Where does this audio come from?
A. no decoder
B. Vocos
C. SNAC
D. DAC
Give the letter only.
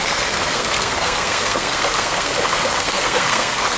C